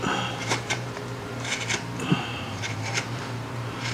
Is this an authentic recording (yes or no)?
no